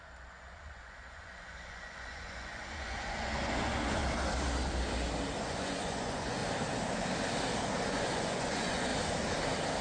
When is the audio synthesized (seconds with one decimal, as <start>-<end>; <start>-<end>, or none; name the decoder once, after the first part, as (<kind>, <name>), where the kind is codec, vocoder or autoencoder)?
0.0-4.0 (vocoder, Vocos); 5.4-6.4; 7.9-8.9